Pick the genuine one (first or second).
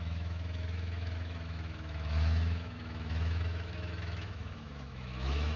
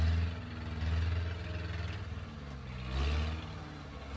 second